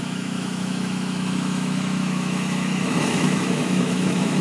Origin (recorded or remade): remade